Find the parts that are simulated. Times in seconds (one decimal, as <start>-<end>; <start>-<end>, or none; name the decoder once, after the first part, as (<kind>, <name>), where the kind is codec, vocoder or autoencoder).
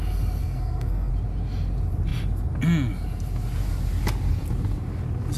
0.4-1.1 (codec, SNAC)